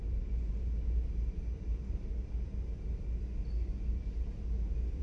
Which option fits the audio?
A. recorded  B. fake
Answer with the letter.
A